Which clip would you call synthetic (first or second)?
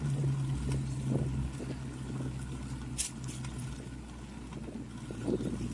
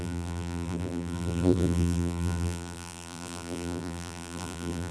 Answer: second